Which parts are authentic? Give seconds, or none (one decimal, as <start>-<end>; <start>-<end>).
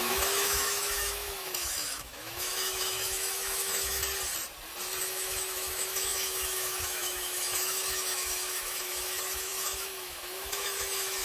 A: 4.0-5.0